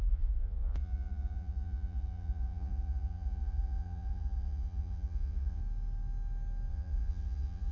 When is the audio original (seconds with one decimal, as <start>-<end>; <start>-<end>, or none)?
5.6-6.7